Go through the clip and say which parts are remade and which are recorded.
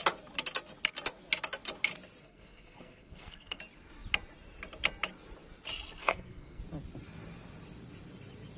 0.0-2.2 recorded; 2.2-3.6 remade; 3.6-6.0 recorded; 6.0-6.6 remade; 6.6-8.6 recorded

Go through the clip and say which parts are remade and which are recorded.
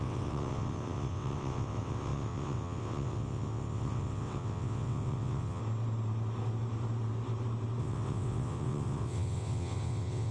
0.0-5.6 remade; 5.6-7.8 recorded; 7.8-10.3 remade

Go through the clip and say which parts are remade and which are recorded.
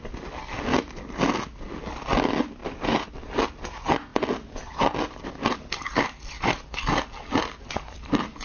0.0-2.6 recorded; 2.6-3.1 remade; 3.1-4.1 recorded; 4.1-6.8 remade; 6.8-8.4 recorded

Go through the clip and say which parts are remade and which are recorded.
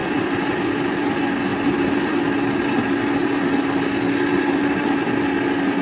0.0-5.8 recorded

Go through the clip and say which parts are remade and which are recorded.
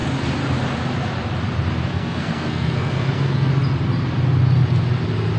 0.0-1.9 recorded; 1.9-3.5 remade; 3.5-5.4 recorded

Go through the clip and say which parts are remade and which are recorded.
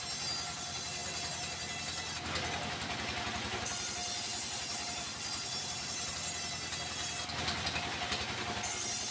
0.0-4.0 recorded; 4.0-6.1 remade; 6.1-9.1 recorded